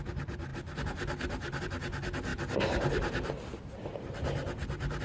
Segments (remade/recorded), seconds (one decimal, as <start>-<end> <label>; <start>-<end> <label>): 0.0-5.0 recorded